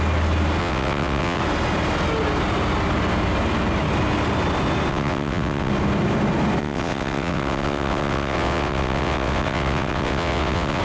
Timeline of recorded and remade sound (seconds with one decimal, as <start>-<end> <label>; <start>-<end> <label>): 0.0-0.6 recorded; 0.6-1.4 remade; 1.4-4.9 recorded; 4.9-5.7 remade; 5.7-6.6 recorded; 6.6-10.8 remade